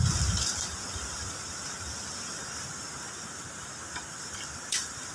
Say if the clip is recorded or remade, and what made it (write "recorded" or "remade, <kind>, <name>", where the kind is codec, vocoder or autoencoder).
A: remade, vocoder, BigVGAN v2